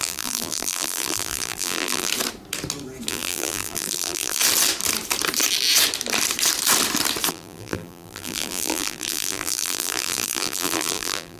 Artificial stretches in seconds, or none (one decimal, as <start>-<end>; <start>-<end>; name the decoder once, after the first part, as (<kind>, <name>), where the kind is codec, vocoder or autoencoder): 0.0-2.1 (vocoder, BigVGAN v2); 3.1-4.4; 7.3-11.4